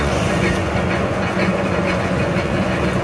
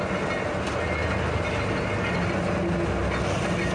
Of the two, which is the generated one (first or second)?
first